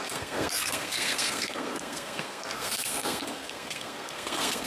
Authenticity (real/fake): fake